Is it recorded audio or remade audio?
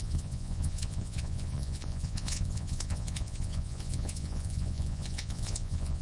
remade